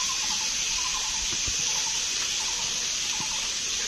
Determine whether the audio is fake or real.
real